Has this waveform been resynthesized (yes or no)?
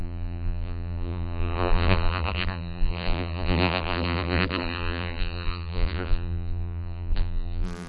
yes